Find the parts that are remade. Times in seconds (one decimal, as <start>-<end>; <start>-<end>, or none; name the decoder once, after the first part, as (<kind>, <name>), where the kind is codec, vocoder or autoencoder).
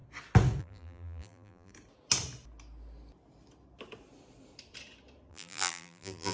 0.6-1.7 (vocoder, BigVGAN v2); 5.3-6.3